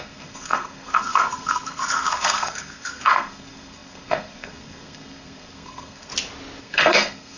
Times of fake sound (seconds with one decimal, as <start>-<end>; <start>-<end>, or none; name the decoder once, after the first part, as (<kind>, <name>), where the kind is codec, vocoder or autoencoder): 0.0-6.1 (codec, SNAC); 6.6-7.4